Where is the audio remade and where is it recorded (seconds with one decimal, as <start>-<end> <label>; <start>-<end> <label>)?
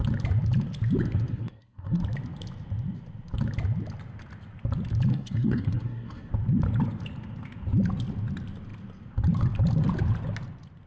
0.0-1.3 recorded; 1.3-2.0 remade; 2.0-5.1 recorded; 5.1-6.3 remade; 6.3-10.9 recorded